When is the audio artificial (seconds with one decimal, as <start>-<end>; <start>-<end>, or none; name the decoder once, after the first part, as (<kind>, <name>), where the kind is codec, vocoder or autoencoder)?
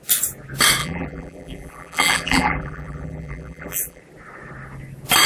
0.8-4.0 (vocoder, BigVGAN v2)